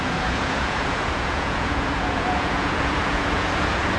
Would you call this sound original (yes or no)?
no